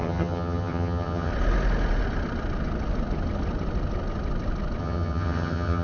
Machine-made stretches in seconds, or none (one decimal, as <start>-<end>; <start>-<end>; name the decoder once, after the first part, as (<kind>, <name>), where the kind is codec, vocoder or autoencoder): 0.0-1.3 (vocoder, HiFi-GAN); 4.8-5.8